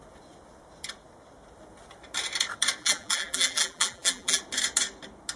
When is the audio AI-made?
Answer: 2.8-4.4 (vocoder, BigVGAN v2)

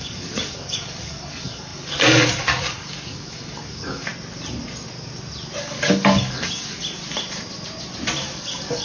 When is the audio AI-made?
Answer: 0.0-4.1 (codec, DAC); 5.6-6.8; 8.4-8.8

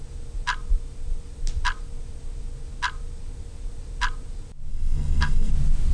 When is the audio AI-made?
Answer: 4.7-5.5 (codec, SNAC)

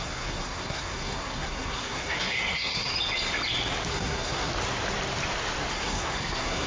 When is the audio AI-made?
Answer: 0.0-2.9 (codec, SNAC); 3.9-4.5; 5.7-6.7

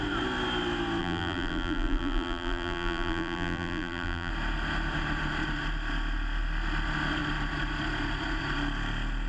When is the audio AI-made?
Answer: 1.0-4.3 (vocoder, BigVGAN v2)

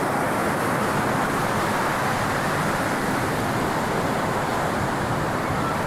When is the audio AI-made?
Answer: 0.4-3.3 (vocoder, BigVGAN v2); 4.5-5.4